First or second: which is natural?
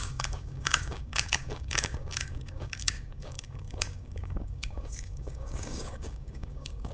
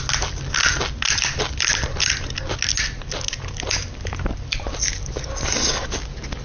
second